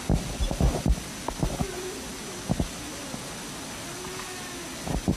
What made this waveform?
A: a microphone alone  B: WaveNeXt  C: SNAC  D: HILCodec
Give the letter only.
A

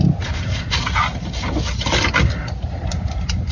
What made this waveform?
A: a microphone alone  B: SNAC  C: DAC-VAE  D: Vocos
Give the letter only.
A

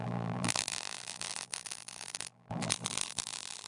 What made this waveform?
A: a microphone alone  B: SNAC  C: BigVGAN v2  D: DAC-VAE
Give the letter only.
C